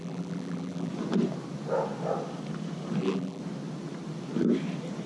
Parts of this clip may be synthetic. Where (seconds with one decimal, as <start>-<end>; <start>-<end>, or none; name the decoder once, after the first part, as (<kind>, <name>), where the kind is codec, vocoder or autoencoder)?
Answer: 0.0-0.9 (vocoder, BigVGAN v2); 3.0-3.4